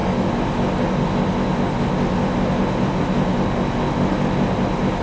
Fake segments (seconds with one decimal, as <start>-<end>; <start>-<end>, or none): none